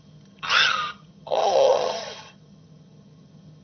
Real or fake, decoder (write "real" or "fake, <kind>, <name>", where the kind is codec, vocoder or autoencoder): fake, vocoder, HiFi-GAN